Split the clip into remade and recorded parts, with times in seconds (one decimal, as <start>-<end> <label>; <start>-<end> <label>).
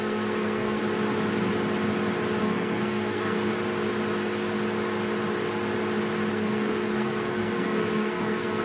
0.0-0.8 remade; 0.8-2.4 recorded; 2.4-3.5 remade; 3.5-6.3 recorded; 6.3-8.6 remade